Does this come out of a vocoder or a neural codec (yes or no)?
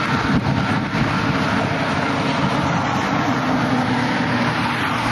no